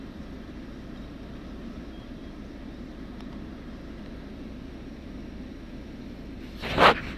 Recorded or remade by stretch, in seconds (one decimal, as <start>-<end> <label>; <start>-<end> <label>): 0.0-2.2 remade; 2.2-3.5 recorded; 3.5-7.2 remade